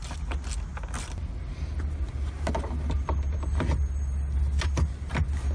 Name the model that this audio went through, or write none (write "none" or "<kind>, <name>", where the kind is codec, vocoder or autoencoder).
none